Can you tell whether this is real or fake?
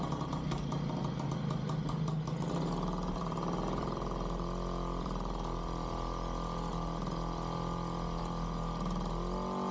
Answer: real